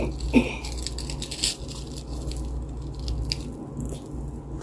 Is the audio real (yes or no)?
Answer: yes